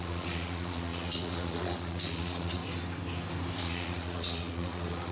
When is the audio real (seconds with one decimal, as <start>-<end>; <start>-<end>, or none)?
2.6-3.6